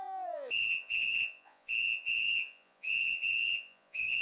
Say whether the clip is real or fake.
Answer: fake